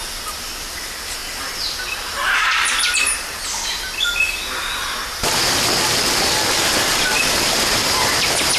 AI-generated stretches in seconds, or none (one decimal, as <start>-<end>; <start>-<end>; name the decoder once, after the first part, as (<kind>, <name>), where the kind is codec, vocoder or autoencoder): none